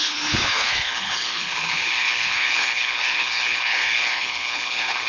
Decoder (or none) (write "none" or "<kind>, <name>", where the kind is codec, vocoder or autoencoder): codec, HILCodec